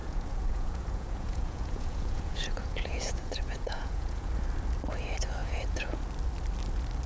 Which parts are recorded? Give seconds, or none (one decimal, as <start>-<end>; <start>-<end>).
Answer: 4.3-5.4; 6.0-7.1